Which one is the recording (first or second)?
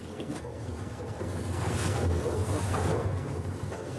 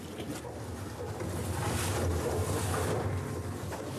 second